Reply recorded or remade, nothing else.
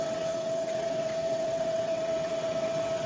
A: remade